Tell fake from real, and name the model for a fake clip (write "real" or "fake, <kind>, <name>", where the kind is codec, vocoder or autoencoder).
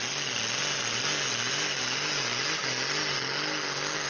real